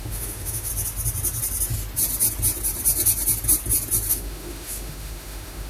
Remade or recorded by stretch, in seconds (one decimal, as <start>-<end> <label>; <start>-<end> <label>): 0.0-0.7 remade; 0.7-4.1 recorded; 4.1-5.7 remade